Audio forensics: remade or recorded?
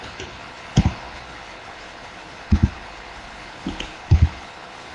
remade